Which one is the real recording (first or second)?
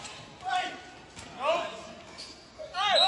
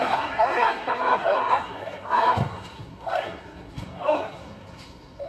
first